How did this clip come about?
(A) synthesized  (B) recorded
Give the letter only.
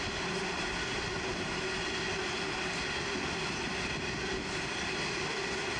B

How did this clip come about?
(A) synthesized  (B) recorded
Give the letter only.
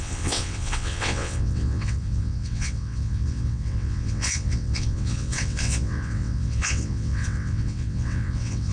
A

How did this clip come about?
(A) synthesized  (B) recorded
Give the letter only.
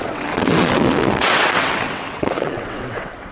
A